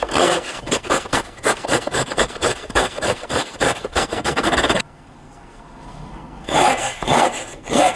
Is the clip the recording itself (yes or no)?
no